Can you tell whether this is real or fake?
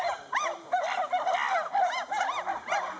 real